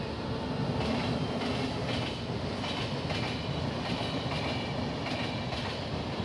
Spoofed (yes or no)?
no